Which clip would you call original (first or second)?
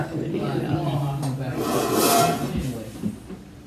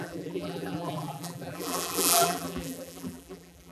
first